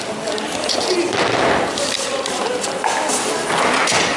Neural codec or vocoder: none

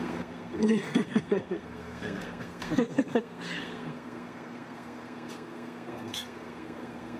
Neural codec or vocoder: codec, SNAC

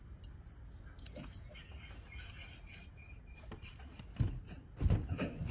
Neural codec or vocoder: none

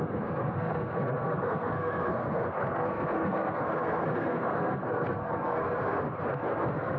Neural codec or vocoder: codec, SNAC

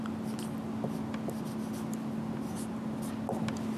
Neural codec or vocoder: none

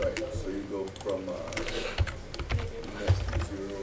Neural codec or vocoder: none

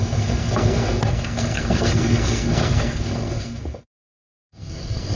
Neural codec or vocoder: codec, SNAC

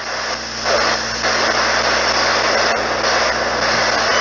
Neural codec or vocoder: none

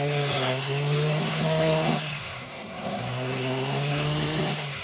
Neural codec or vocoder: codec, SNAC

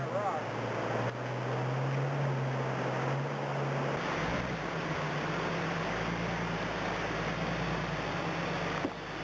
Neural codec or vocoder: none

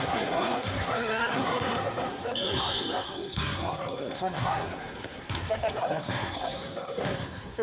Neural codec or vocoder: codec, SNAC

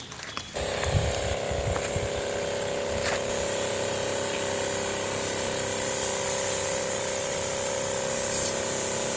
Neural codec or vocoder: none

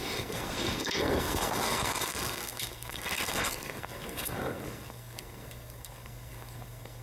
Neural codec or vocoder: codec, SNAC